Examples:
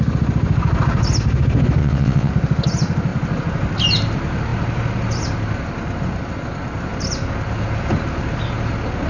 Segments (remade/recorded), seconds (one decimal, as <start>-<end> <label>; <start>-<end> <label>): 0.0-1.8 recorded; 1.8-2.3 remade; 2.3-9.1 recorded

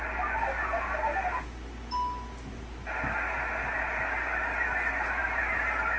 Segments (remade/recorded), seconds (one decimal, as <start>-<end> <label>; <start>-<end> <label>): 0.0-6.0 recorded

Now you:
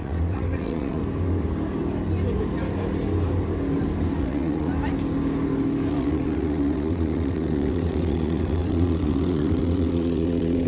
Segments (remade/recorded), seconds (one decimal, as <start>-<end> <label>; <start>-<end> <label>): 0.0-1.0 remade; 1.0-4.2 recorded; 4.2-4.7 remade; 4.7-5.9 recorded; 5.9-10.7 remade